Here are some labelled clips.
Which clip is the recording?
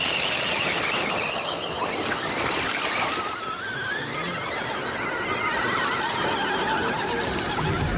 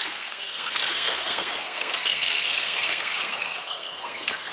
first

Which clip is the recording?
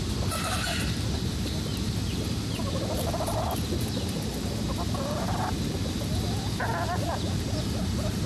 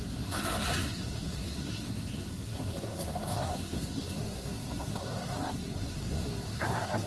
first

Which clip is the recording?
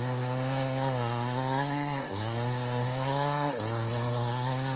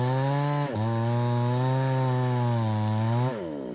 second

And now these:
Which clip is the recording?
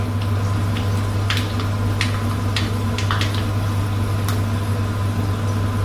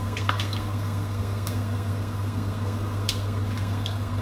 first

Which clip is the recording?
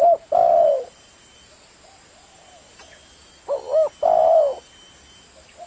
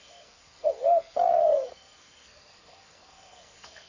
first